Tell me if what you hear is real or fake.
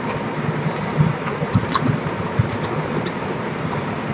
fake